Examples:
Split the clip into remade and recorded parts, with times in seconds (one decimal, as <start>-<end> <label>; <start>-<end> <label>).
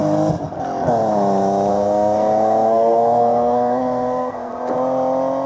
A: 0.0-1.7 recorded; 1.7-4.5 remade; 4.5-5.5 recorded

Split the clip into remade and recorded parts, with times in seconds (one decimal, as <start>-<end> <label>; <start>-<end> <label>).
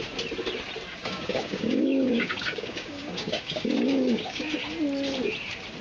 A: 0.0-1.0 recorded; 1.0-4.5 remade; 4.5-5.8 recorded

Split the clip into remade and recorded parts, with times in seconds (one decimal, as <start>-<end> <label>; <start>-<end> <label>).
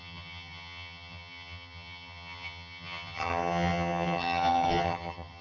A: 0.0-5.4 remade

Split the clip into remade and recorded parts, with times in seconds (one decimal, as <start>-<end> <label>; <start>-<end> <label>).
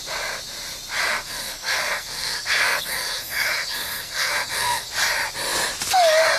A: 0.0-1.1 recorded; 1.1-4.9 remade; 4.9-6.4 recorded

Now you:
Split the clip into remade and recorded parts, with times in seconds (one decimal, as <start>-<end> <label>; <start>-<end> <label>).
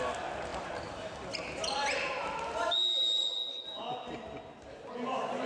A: 0.0-0.5 recorded; 0.5-2.1 remade; 2.1-5.5 recorded